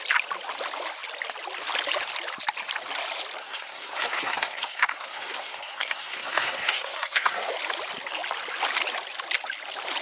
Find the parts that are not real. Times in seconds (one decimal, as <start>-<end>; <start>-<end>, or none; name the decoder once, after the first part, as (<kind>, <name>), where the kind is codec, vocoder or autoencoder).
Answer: 3.4-7.5 (codec, SNAC)